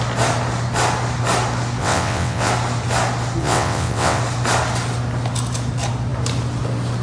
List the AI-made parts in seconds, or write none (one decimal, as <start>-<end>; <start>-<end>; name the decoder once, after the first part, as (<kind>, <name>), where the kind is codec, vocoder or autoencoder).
1.8-2.5 (vocoder, WaveNeXt); 3.4-4.2